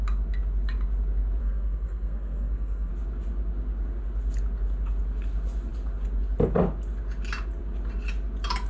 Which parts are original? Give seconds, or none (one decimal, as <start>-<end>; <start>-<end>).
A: 0.0-1.4; 2.9-8.7